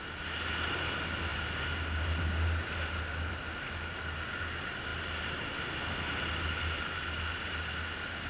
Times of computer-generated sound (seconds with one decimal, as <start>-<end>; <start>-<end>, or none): none